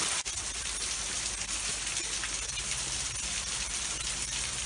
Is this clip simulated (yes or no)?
no